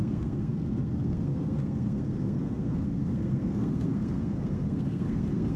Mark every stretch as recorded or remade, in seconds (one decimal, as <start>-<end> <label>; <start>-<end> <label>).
0.0-5.6 remade